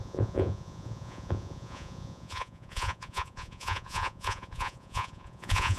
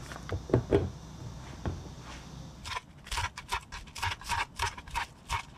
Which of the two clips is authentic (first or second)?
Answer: second